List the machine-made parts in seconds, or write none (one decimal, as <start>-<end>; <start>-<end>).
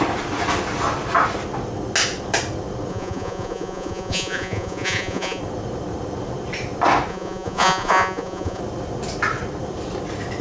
2.9-5.4; 7.1-8.6